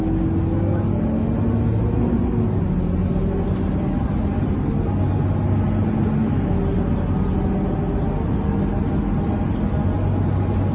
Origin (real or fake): real